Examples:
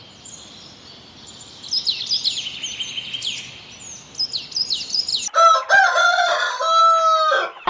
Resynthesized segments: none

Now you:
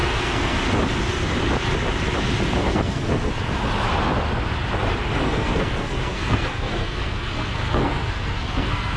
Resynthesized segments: 0.0-0.6 (codec, SNAC); 2.6-3.3; 5.2-9.0

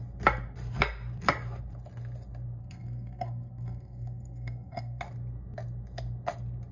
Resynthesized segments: 2.6-5.0 (codec, SNAC)